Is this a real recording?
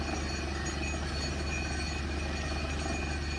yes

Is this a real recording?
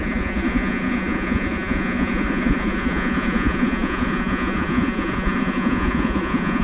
no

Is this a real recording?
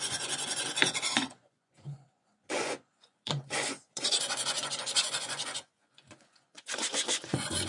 no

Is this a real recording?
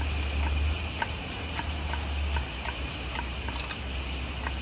yes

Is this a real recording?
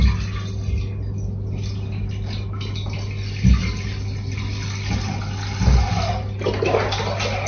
yes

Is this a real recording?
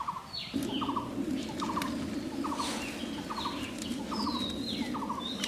yes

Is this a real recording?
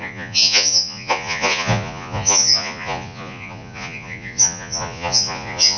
no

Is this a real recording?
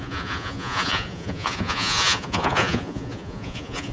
no